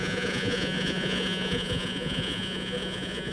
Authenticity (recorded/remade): remade